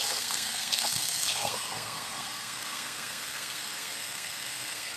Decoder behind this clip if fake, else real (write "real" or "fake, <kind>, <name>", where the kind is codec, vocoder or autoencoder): fake, codec, SNAC